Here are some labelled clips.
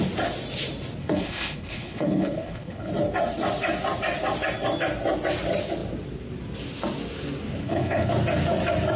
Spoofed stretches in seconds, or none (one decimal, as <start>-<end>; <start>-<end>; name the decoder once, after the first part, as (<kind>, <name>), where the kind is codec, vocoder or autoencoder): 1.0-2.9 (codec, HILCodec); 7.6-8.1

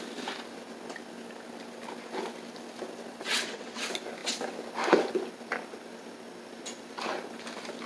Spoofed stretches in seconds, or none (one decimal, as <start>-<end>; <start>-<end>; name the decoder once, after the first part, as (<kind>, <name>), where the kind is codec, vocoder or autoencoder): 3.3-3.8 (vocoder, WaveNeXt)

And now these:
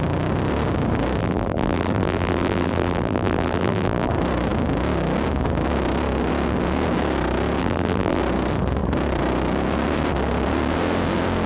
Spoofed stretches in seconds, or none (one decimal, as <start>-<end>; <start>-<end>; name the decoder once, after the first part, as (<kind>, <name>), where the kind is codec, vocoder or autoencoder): 1.2-4.1 (vocoder, BigVGAN v2); 7.6-8.2

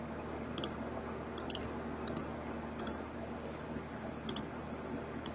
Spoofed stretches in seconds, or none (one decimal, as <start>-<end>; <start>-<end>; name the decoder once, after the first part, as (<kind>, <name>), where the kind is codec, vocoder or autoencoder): none

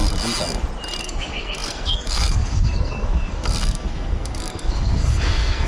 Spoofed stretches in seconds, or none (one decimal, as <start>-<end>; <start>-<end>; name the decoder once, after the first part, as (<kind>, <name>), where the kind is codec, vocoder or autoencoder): 1.0-5.7 (codec, SNAC)

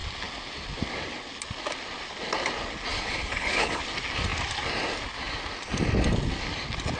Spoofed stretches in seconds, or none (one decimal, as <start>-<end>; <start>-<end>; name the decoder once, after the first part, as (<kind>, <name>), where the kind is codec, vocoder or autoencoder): 2.9-3.8 (codec, HILCodec)

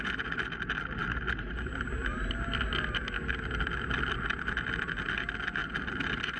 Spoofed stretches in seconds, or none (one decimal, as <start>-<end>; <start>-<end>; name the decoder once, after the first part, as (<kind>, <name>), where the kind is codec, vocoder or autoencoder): 5.6-6.4 (vocoder, BigVGAN v2)